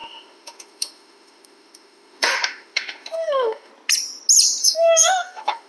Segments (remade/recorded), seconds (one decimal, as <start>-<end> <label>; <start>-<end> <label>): 0.0-3.7 remade; 3.7-4.6 recorded; 4.6-5.7 remade